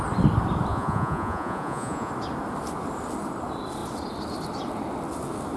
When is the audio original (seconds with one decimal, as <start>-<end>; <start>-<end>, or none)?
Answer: 0.0-0.7; 2.1-5.6